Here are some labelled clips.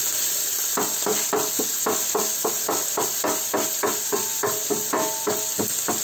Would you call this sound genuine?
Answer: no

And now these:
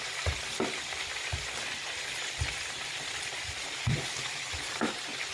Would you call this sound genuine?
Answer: no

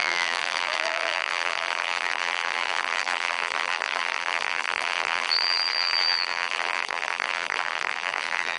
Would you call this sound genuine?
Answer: no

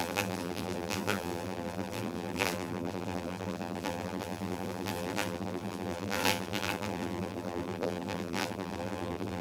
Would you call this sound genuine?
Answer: no